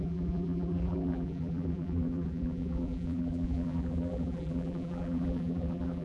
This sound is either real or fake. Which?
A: fake